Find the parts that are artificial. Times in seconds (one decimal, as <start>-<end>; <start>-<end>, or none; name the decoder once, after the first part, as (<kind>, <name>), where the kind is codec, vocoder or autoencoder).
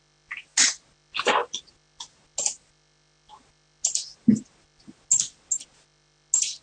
none